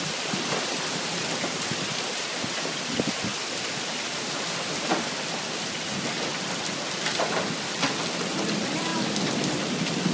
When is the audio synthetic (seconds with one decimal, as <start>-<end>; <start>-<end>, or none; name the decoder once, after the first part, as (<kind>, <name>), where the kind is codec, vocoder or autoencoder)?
0.0-3.3 (vocoder, BigVGAN v2); 4.3-10.1